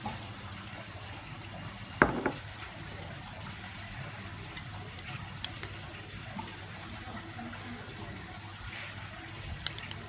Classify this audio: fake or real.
real